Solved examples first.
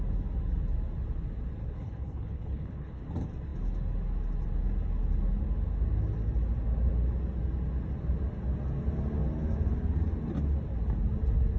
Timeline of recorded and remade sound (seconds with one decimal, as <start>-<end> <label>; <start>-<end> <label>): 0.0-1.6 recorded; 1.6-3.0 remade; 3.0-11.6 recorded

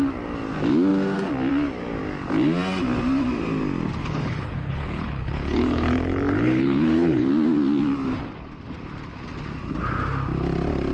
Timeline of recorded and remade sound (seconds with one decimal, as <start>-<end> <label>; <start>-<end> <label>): 0.0-4.0 recorded; 4.0-7.3 remade; 7.3-10.9 recorded

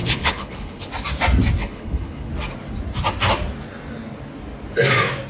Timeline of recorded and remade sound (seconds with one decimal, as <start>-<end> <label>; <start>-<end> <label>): 0.0-0.9 remade; 0.9-1.6 recorded; 1.6-2.3 remade; 2.3-5.3 recorded

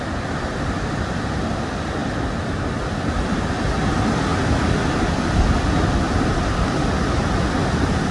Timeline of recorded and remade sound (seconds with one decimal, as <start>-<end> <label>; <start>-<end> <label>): 0.0-8.1 recorded

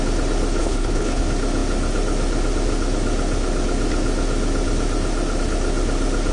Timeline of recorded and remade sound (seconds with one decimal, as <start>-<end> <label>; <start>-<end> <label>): 0.0-0.6 recorded; 0.6-1.2 remade; 1.2-6.3 recorded